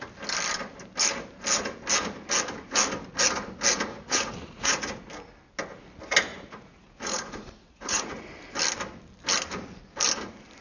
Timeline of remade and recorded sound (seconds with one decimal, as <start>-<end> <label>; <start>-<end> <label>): 0.0-3.9 recorded; 3.9-5.0 remade; 5.0-6.3 recorded; 6.3-8.3 remade; 8.3-10.6 recorded